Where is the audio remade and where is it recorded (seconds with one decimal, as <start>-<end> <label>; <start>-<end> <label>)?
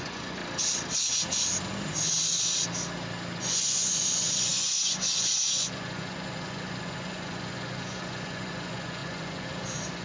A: 0.0-0.4 remade; 0.4-3.4 recorded; 3.4-10.0 remade